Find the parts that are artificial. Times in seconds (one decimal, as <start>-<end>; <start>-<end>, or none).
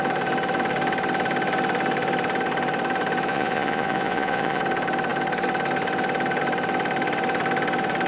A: 3.3-4.6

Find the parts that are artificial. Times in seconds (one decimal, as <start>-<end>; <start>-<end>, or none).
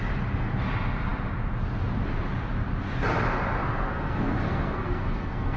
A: 3.6-5.6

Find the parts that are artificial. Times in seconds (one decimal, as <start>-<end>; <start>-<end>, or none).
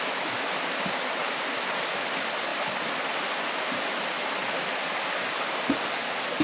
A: none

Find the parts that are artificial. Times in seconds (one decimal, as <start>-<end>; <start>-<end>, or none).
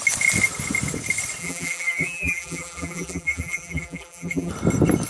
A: 1.4-4.5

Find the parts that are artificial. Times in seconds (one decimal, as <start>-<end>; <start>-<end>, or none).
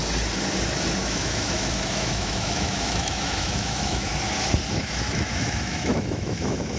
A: 1.0-4.1; 4.7-6.8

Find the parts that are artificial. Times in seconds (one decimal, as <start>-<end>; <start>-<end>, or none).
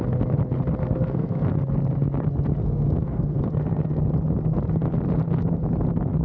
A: 0.8-1.4; 2.6-3.4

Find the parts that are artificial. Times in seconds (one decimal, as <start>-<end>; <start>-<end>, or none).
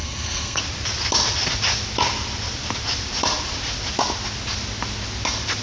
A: 0.0-0.6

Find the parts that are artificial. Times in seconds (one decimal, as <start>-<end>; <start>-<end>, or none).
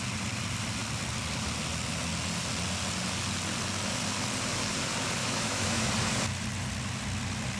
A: 5.2-5.9